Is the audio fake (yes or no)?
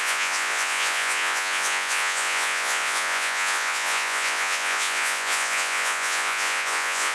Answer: yes